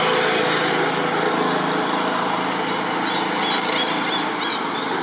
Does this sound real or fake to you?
real